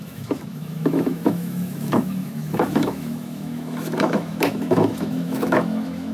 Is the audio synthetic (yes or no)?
yes